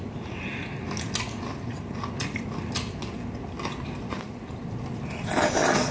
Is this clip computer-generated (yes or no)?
no